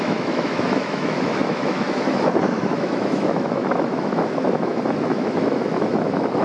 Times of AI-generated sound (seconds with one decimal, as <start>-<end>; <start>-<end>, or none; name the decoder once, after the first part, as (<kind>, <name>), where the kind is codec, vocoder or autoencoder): 0.0-6.4 (autoencoder, DAC-VAE)

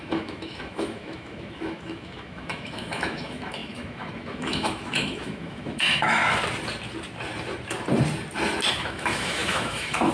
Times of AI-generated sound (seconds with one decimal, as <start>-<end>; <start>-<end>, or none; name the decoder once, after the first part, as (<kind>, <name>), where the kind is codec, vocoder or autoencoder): 0.0-6.2 (autoencoder, DAC-VAE); 8.7-10.1

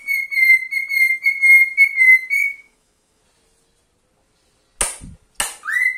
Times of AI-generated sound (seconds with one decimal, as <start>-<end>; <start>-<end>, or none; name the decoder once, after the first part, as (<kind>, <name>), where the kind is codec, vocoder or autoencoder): 2.4-3.2 (autoencoder, DAC-VAE)

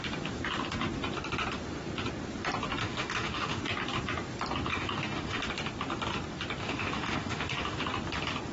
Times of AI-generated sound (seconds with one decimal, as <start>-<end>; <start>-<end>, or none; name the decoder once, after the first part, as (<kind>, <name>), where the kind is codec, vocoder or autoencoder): 2.8-3.6 (autoencoder, DAC-VAE); 4.7-5.4; 6.6-7.8

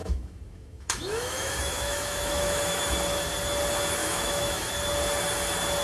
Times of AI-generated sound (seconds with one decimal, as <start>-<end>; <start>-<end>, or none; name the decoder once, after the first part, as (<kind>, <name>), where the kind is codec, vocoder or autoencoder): 0.0-2.8 (autoencoder, DAC-VAE); 4.0-4.7

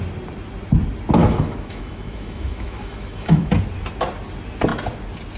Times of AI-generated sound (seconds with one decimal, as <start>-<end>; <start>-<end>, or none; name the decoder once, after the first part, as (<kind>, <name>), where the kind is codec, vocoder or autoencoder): 1.2-3.5 (autoencoder, DAC-VAE)

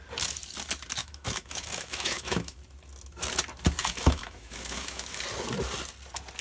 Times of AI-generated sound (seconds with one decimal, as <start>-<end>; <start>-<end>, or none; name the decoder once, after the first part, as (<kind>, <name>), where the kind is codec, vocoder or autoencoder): 1.0-2.6 (autoencoder, DAC-VAE); 3.8-5.2